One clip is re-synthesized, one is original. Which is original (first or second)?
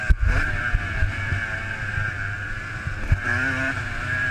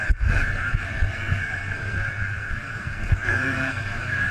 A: first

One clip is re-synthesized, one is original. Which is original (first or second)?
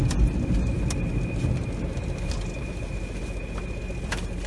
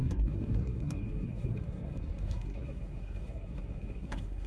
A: first